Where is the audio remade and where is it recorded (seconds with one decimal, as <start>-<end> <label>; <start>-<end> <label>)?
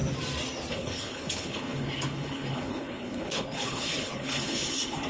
0.0-0.7 recorded; 0.7-5.1 remade